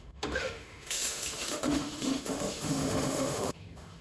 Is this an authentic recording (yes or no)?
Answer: no